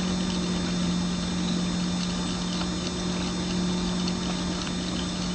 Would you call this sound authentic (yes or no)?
yes